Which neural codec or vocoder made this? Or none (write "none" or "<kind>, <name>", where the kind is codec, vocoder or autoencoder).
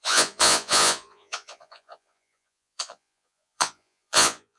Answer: vocoder, Vocos